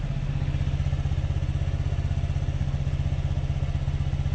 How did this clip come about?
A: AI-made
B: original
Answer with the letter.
B